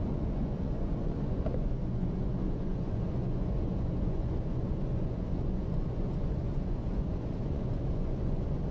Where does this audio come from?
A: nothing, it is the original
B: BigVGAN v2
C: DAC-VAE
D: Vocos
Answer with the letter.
D